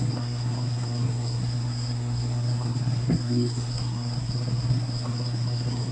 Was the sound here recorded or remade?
remade